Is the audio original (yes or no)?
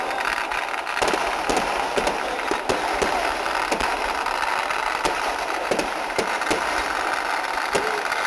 yes